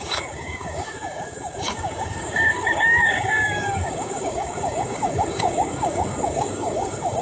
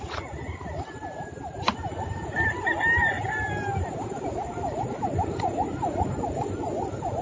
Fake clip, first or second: first